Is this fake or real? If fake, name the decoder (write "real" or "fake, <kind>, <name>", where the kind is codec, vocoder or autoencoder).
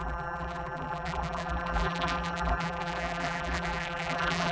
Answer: fake, vocoder, BigVGAN v2